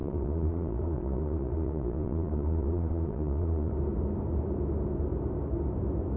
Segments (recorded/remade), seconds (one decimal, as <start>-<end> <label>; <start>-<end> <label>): 0.0-3.7 remade; 3.7-6.2 recorded